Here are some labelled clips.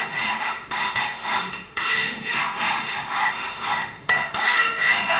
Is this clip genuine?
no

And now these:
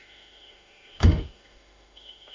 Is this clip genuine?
no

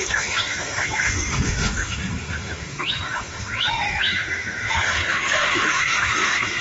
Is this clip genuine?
no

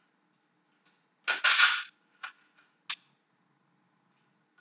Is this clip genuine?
yes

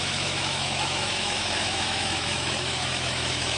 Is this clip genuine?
no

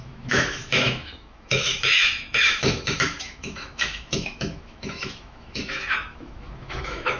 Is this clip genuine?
no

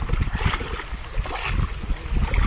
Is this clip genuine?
yes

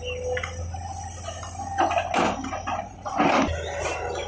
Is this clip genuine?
yes